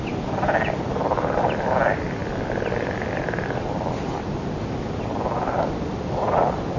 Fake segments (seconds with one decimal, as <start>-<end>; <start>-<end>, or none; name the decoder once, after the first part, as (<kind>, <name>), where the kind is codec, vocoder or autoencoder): none